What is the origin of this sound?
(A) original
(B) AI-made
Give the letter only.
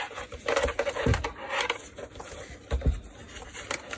A